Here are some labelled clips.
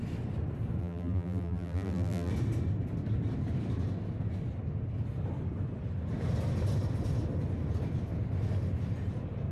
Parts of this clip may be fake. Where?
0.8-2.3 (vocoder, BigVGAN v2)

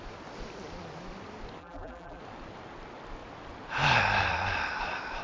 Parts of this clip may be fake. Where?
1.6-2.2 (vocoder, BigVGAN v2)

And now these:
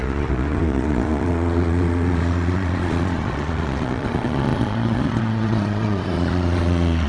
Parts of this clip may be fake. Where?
0.0-7.1 (vocoder, Vocos)